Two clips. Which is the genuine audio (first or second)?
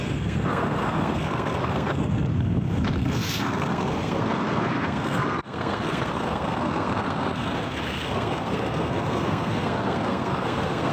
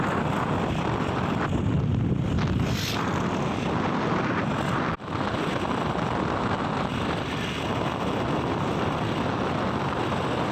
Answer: second